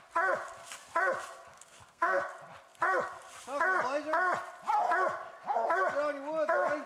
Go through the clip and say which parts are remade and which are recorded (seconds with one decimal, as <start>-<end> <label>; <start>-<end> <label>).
0.0-1.5 recorded; 1.5-2.2 remade; 2.2-6.9 recorded